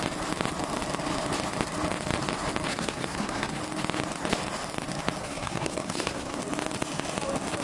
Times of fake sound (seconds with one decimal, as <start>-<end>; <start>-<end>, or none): 2.7-3.6; 5.2-6.4